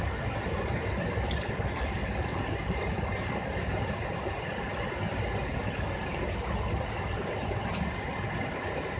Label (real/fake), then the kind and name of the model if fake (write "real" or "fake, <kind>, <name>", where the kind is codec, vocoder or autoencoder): real